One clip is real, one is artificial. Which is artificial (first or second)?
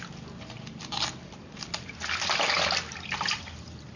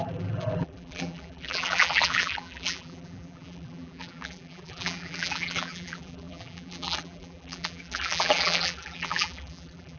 second